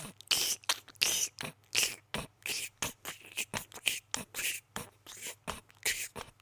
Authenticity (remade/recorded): recorded